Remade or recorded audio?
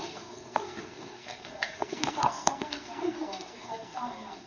remade